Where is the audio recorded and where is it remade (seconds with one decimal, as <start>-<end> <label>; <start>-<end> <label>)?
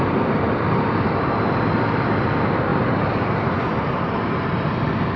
0.0-2.7 recorded; 2.7-4.1 remade; 4.1-5.2 recorded